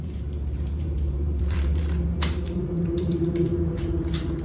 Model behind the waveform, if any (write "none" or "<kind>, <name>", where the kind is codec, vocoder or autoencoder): vocoder, BigVGAN v2